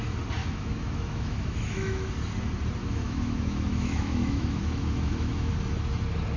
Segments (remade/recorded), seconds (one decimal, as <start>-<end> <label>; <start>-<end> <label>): 0.0-0.4 recorded; 0.4-2.1 remade; 2.1-2.8 recorded; 2.8-5.5 remade; 5.5-6.4 recorded